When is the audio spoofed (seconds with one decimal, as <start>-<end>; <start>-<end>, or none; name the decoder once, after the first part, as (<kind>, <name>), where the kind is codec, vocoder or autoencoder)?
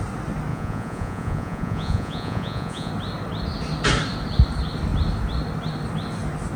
0.5-2.9 (vocoder, Vocos)